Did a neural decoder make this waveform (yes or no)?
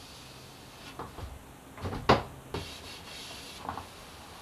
no